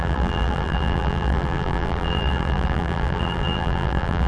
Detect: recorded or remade remade